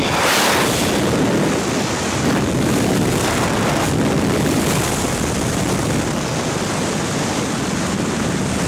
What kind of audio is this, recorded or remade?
recorded